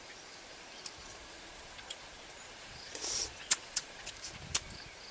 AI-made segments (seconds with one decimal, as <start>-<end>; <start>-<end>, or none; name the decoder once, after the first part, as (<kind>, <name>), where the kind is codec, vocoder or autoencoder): 1.0-4.1 (vocoder, Vocos)